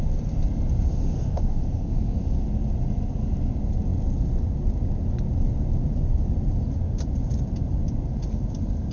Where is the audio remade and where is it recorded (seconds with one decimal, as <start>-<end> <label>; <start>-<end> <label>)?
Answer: 0.0-0.9 recorded; 0.9-2.2 remade; 2.2-8.9 recorded